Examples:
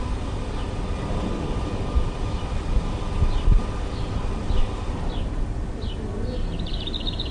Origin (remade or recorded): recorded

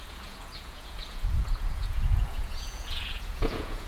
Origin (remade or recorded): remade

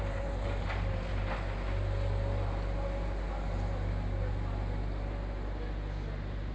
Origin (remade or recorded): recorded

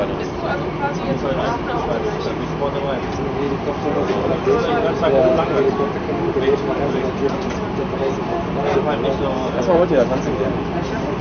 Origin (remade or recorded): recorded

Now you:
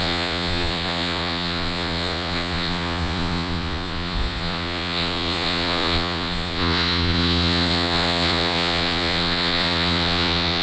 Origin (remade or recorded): remade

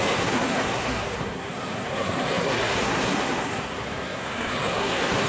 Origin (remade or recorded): remade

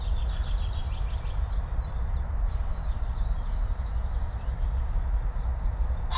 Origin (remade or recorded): recorded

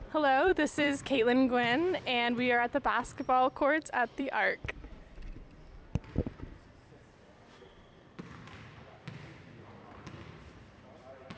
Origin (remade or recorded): remade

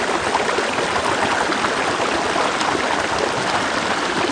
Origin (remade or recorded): recorded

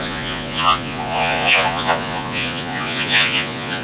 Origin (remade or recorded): remade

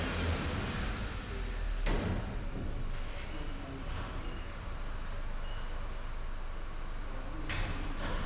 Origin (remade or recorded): recorded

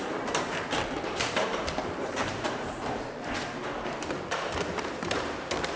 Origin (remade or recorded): remade